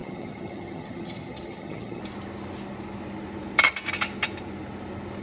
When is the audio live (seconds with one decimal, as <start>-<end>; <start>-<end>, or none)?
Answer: 2.0-5.2